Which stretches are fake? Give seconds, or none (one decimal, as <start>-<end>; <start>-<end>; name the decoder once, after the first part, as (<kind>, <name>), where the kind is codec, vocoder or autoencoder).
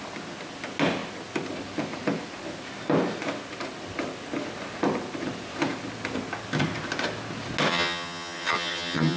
7.7-9.2 (vocoder, HiFi-GAN)